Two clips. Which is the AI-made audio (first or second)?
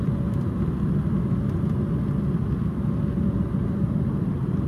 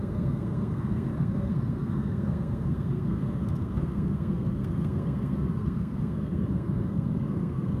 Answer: second